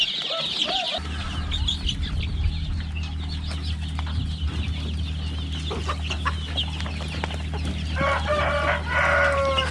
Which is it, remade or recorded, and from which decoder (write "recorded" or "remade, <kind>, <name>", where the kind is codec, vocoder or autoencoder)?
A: recorded